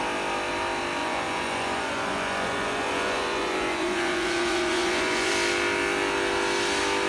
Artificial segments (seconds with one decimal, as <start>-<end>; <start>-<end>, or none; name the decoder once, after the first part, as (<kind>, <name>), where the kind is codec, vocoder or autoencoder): 1.0-5.3 (vocoder, Vocos)